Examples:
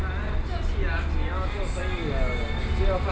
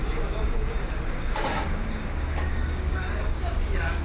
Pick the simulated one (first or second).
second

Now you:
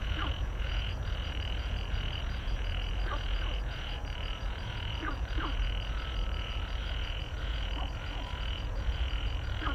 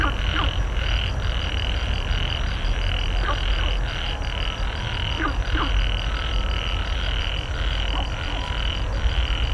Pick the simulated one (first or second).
first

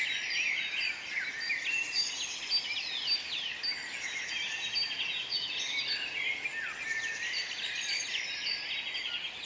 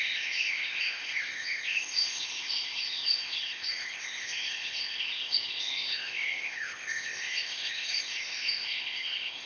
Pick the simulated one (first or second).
second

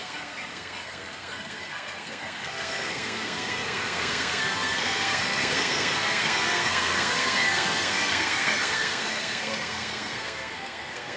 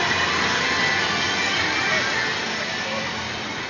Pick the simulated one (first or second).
first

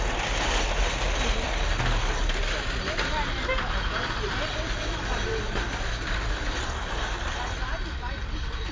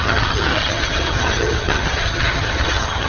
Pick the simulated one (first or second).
second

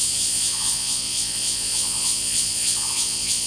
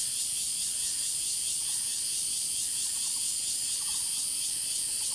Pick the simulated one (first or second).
first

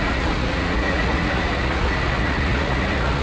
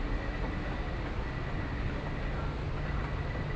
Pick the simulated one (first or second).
first